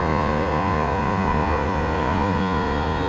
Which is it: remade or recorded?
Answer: remade